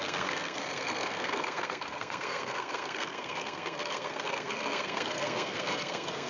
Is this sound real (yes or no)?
no